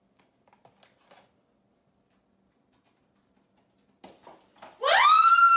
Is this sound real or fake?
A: real